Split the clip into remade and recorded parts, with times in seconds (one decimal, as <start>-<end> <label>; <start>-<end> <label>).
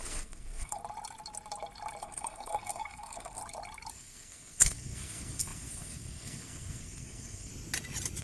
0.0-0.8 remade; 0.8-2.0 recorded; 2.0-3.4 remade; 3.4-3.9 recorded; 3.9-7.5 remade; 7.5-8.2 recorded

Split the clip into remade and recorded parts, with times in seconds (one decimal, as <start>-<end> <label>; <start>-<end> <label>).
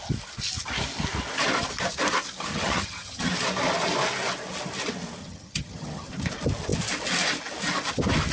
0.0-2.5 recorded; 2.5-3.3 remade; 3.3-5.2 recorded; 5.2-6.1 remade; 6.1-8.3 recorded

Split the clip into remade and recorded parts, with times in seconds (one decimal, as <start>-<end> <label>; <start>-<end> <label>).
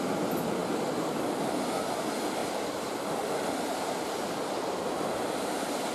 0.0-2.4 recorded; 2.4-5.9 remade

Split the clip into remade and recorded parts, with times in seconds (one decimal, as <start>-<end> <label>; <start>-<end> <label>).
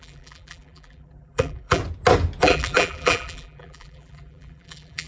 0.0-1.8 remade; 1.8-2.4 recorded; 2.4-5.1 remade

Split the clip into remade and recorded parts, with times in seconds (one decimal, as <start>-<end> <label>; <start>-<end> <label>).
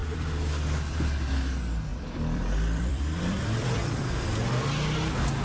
0.0-0.5 remade; 0.5-1.9 recorded; 1.9-4.0 remade; 4.0-5.4 recorded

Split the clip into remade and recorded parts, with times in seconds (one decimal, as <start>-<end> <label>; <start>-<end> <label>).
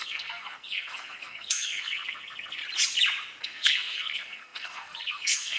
0.0-2.6 remade; 2.6-3.4 recorded; 3.4-5.6 remade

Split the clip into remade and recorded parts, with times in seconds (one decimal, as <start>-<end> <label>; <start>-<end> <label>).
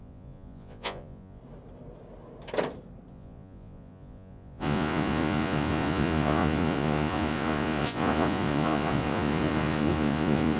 0.0-1.4 remade; 1.4-3.1 recorded; 3.1-10.6 remade